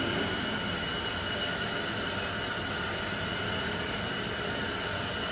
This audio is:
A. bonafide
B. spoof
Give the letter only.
A